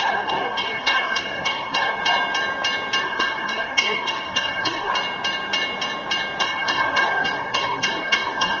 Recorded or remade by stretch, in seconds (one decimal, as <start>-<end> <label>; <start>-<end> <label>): 0.0-2.0 remade; 2.0-3.0 recorded; 3.0-4.9 remade; 4.9-6.4 recorded; 6.4-8.6 remade